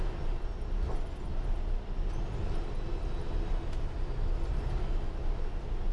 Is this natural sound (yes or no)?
yes